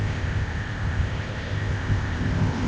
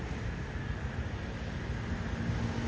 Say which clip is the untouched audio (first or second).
second